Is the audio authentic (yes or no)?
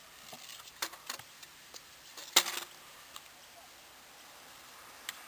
yes